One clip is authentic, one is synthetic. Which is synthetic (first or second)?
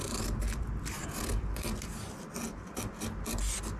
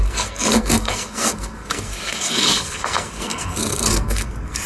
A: second